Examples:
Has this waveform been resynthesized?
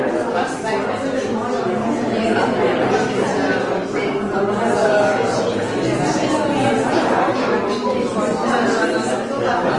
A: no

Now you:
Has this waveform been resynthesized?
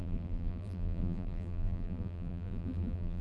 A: yes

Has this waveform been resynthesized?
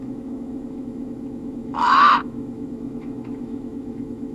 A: yes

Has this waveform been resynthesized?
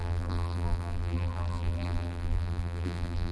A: yes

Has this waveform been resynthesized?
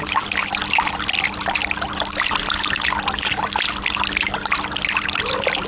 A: no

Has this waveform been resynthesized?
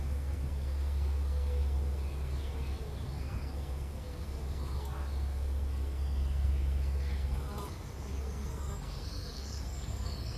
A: yes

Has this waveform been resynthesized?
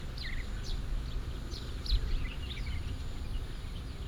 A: no